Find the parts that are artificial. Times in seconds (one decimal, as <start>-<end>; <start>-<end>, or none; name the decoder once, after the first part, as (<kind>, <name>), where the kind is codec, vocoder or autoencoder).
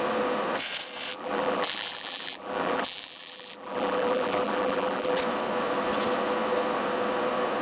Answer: 1.1-5.2 (vocoder, BigVGAN v2)